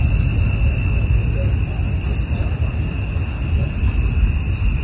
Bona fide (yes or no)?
yes